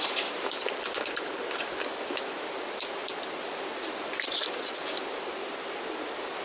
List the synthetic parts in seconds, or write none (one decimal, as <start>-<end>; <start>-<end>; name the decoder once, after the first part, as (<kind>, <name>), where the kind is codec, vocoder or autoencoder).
none